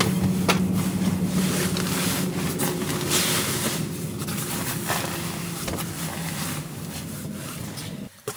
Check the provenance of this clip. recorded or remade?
recorded